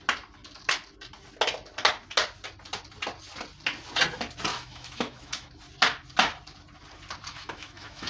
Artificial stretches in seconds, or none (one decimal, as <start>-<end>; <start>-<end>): 4.5-5.6; 7.3-8.1